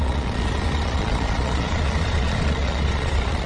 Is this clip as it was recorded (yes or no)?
no